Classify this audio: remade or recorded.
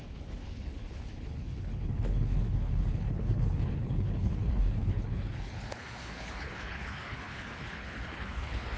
remade